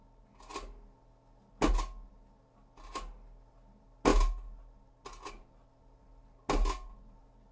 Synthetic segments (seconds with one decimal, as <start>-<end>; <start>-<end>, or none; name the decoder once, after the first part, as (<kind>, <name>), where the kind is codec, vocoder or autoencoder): none

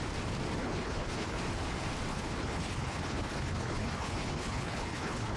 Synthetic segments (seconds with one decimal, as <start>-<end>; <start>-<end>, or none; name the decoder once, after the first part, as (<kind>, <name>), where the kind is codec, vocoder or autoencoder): 0.6-1.4 (codec, HILCodec); 2.1-5.4

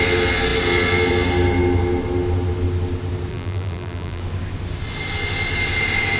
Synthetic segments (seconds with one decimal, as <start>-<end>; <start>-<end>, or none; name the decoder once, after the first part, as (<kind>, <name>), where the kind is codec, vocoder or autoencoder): 3.3-4.2 (vocoder, BigVGAN v2)

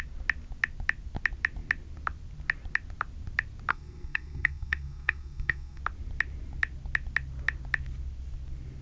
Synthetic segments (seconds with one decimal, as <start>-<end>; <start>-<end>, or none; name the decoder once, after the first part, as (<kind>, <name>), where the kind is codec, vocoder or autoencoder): 3.7-5.8 (codec, SNAC)

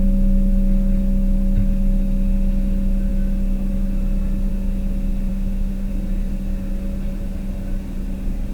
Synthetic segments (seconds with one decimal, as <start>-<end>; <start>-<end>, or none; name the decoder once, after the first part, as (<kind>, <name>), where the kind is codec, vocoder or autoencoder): 5.3-5.9 (autoencoder, DAC-VAE)

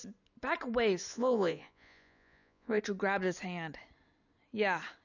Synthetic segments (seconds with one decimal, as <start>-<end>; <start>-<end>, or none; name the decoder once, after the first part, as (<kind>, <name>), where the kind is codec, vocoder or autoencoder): 1.1-2.8 (vocoder, Vocos)